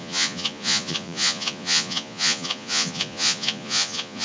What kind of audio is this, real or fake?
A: fake